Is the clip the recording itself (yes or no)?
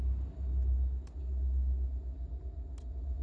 yes